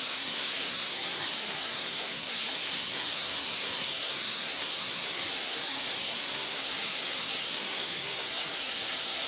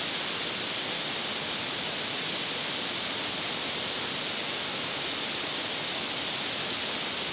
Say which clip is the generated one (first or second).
first